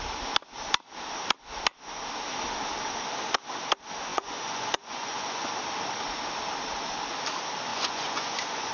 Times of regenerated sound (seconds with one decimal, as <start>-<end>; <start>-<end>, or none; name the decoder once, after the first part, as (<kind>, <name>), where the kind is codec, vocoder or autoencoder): 4.1-5.5 (vocoder, Vocos); 7.7-8.7